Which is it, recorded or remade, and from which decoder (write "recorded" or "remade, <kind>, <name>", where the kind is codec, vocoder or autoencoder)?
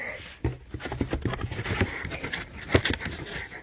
recorded